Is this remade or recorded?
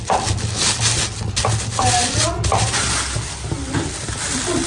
recorded